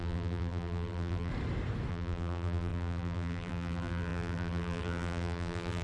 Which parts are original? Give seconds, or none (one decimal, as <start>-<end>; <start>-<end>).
1.3-1.9